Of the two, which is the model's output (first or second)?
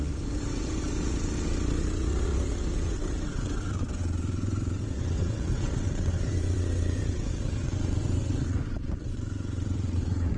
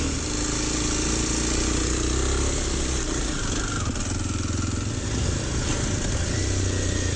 first